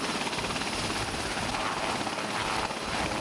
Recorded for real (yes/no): yes